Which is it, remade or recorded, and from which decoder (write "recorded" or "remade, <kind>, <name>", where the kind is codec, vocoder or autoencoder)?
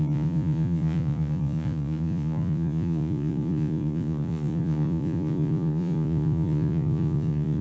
remade, vocoder, Vocos